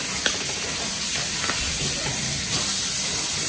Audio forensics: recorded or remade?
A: recorded